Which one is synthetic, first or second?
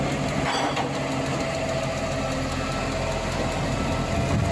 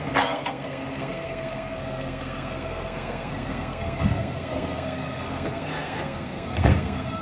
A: second